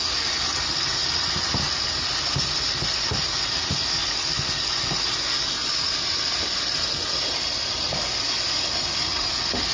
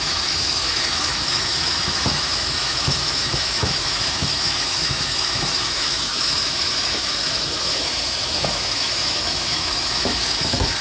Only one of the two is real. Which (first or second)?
first